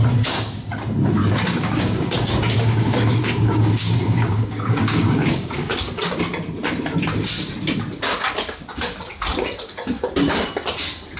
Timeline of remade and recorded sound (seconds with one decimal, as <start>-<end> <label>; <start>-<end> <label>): 0.0-1.2 recorded; 1.2-6.2 remade; 6.2-11.2 recorded